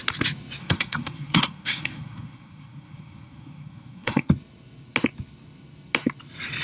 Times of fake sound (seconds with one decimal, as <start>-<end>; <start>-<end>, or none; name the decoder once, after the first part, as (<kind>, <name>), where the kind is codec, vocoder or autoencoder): 0.6-4.3 (codec, SNAC)

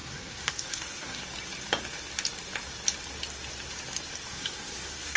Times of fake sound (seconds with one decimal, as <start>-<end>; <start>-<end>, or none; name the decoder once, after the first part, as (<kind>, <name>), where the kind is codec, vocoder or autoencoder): 0.0-1.2 (codec, SNAC); 4.3-5.2

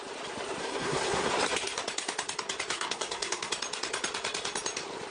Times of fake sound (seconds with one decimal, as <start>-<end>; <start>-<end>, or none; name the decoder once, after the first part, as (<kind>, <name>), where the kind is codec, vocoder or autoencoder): 0.6-1.3 (codec, SNAC); 2.7-3.5

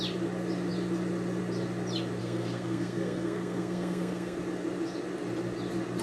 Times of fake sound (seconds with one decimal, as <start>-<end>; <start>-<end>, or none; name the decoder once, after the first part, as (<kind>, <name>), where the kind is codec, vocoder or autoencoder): 2.2-4.4 (codec, SNAC)